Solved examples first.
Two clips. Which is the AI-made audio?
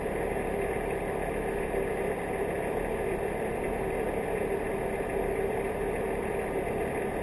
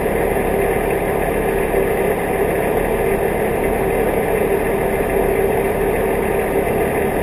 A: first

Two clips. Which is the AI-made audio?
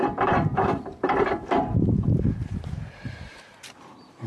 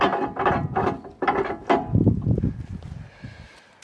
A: first